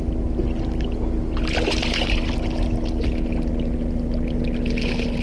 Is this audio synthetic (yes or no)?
no